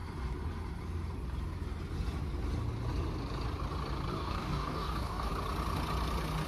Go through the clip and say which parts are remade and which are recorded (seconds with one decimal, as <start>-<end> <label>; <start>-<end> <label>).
0.0-4.1 recorded; 4.1-5.3 remade; 5.3-6.5 recorded

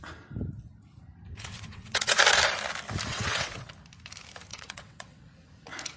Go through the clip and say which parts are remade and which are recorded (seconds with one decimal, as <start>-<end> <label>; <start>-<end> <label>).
0.0-1.3 recorded; 1.3-2.2 remade; 2.2-3.1 recorded; 3.1-3.7 remade; 3.7-4.5 recorded; 4.5-5.3 remade; 5.3-6.0 recorded

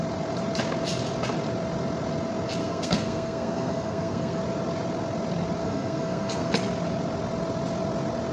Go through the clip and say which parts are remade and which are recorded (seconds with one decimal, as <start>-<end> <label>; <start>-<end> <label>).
0.0-2.6 recorded; 2.6-4.4 remade; 4.4-5.6 recorded; 5.6-6.5 remade; 6.5-8.3 recorded

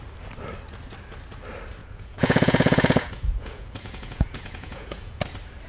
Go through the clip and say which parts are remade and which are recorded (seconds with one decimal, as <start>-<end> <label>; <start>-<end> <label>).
0.0-1.8 recorded; 1.8-5.2 remade; 5.2-5.7 recorded

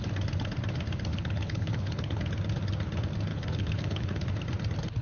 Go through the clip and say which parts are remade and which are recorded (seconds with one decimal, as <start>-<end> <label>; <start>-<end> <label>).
0.0-1.1 recorded; 1.1-2.2 remade; 2.2-3.3 recorded; 3.3-4.3 remade; 4.3-5.0 recorded